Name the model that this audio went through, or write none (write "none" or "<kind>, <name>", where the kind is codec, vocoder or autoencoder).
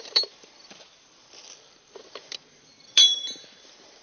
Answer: vocoder, BigVGAN v2